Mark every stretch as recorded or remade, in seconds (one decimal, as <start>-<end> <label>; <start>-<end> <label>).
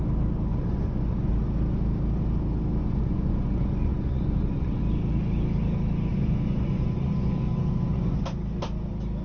0.0-0.5 recorded; 0.5-1.3 remade; 1.3-2.8 recorded; 2.8-4.8 remade; 4.8-6.1 recorded; 6.1-8.2 remade; 8.2-9.2 recorded